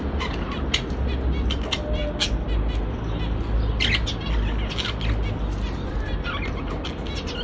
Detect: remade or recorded recorded